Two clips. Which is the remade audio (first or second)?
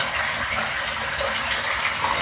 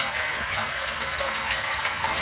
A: second